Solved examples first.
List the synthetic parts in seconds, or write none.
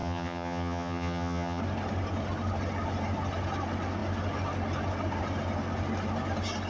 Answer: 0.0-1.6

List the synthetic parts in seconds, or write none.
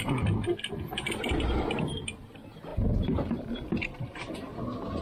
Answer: 2.7-4.5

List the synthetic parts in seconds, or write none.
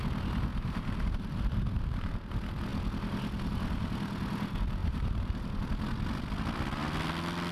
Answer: 0.5-2.3; 4.8-5.6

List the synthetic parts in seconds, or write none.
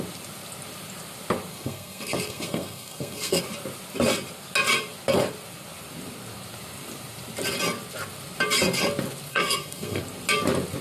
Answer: 1.5-3.4; 9.3-10.0